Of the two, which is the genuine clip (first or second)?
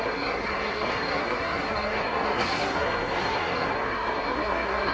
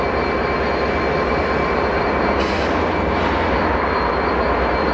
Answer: second